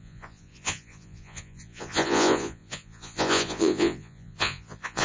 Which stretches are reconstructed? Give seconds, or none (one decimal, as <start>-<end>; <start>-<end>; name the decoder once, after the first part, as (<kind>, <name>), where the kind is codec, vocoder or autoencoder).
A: 0.0-5.0 (vocoder, Vocos)